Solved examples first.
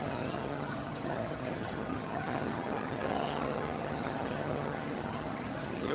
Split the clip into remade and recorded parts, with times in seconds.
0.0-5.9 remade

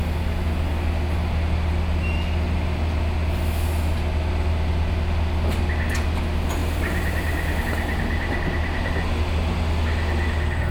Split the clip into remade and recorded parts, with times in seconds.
0.0-10.7 recorded

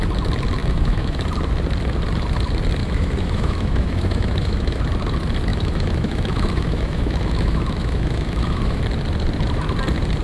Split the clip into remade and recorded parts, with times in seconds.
0.0-0.6 recorded; 0.6-1.2 remade; 1.2-2.8 recorded; 2.8-4.8 remade; 4.8-5.5 recorded; 5.5-8.8 remade; 8.8-10.2 recorded

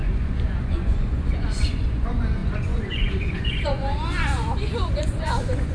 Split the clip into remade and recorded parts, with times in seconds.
0.0-5.7 remade

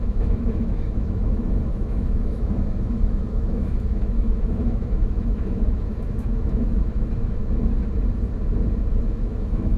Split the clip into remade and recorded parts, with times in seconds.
0.0-7.4 remade; 7.4-9.1 recorded; 9.1-9.8 remade

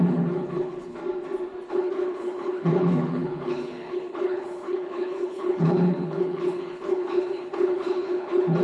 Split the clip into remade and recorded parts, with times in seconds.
0.0-1.0 remade; 1.0-1.7 recorded; 1.7-8.6 remade

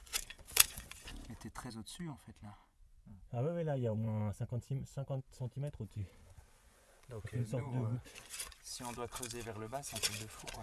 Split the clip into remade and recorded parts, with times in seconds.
0.0-1.1 remade; 1.1-1.7 recorded; 1.7-10.6 remade

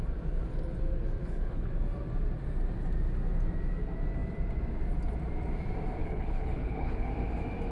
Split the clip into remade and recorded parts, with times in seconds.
0.0-1.2 recorded; 1.2-1.7 remade; 1.7-6.0 recorded; 6.0-7.1 remade; 7.1-7.7 recorded